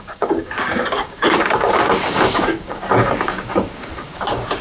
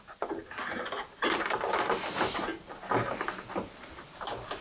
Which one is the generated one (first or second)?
first